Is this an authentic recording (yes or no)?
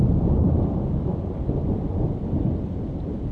no